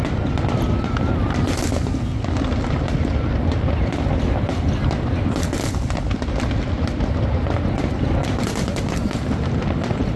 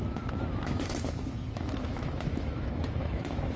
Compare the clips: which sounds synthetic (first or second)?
second